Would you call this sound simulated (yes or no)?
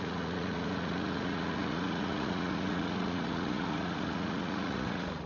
yes